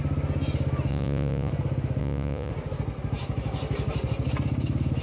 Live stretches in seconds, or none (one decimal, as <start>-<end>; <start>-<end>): 0.0-0.9; 1.5-2.0; 2.5-5.0